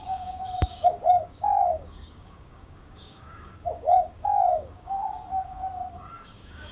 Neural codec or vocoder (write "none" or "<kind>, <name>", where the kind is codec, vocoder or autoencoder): codec, DAC